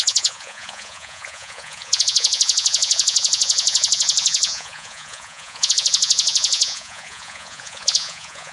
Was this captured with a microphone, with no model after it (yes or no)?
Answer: no